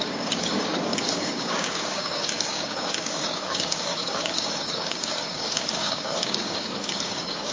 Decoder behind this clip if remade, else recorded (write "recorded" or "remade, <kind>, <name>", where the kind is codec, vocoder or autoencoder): remade, codec, DAC